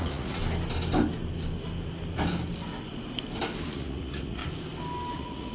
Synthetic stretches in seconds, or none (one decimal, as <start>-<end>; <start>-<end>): 0.0-0.4; 3.7-4.4; 5.1-5.5